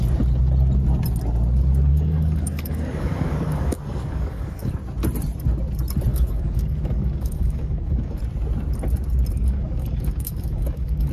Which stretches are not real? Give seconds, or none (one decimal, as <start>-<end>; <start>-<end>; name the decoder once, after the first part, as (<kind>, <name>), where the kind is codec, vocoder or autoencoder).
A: 1.9-4.7 (codec, DAC); 6.1-8.2; 9.4-11.1

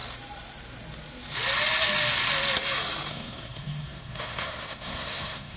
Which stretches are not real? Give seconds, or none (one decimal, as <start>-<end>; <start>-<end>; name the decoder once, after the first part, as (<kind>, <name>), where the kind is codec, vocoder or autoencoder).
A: 3.1-5.6 (codec, SNAC)